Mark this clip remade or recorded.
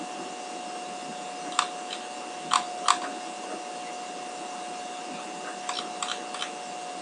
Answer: recorded